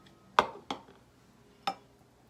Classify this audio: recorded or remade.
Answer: recorded